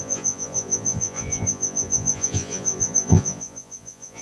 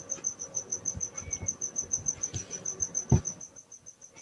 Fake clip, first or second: first